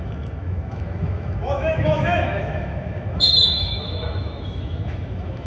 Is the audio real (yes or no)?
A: no